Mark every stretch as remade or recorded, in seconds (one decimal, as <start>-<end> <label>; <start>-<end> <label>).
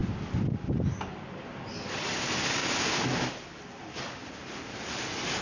0.0-1.7 recorded; 1.7-2.6 remade; 2.6-3.6 recorded; 3.6-5.4 remade